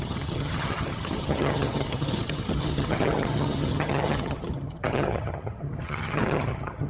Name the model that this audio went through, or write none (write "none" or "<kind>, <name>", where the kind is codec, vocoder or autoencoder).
vocoder, HiFi-GAN